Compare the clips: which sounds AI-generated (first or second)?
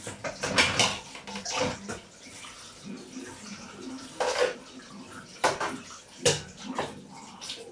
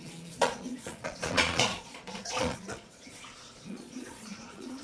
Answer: second